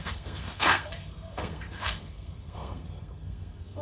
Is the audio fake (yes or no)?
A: yes